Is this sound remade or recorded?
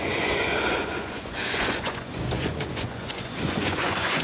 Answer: remade